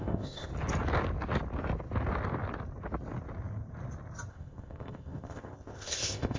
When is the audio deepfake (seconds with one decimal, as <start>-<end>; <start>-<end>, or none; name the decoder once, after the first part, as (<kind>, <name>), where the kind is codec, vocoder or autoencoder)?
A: 0.0-0.5 (codec, ZipCodec); 4.3-6.4